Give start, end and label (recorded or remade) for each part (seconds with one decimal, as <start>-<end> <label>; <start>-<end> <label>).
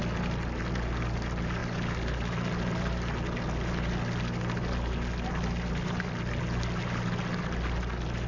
0.0-8.3 recorded